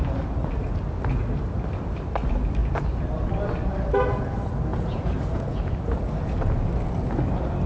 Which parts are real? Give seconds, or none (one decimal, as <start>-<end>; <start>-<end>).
0.0-4.7; 5.6-7.7